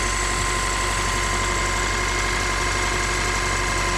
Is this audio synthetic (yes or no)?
no